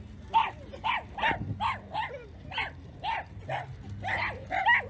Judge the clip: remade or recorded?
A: recorded